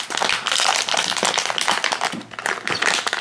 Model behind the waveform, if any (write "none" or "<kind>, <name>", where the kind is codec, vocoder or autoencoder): none